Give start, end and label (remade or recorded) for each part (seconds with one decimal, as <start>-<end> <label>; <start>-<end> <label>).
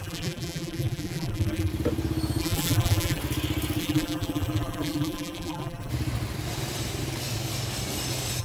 0.0-1.7 remade; 1.7-2.4 recorded; 2.4-3.2 remade; 3.2-3.8 recorded; 3.8-5.9 remade; 5.9-8.4 recorded